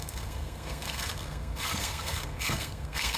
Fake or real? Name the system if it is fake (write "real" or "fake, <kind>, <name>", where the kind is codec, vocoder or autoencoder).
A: fake, codec, SNAC